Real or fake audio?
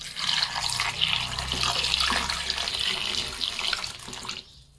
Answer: real